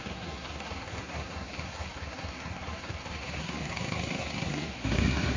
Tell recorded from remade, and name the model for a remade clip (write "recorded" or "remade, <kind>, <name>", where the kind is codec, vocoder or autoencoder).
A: remade, codec, SNAC